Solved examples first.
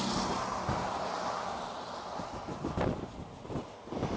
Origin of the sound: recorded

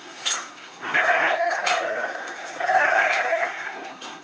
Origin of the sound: remade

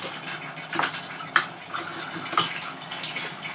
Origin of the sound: recorded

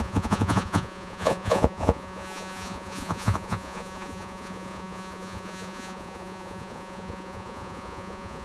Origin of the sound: remade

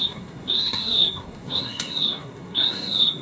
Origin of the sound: remade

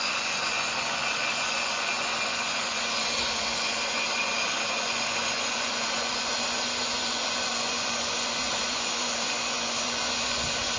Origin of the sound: remade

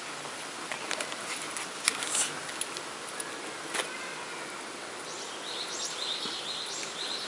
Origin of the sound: recorded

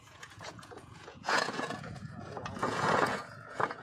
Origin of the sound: remade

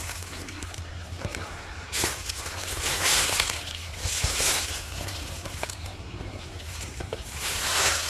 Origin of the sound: remade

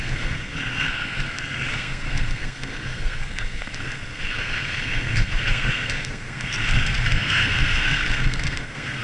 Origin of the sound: remade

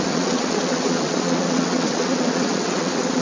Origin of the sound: remade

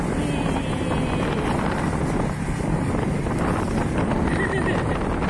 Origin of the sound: recorded